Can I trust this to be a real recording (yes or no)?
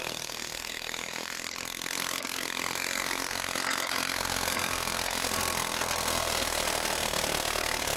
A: no